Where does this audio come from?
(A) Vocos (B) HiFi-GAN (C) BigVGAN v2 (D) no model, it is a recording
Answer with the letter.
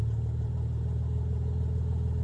D